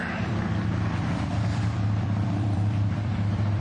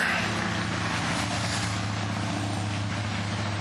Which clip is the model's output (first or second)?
first